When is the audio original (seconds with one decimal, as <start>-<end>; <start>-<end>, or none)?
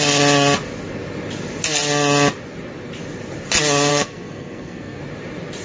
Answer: 0.0-3.9; 5.0-5.6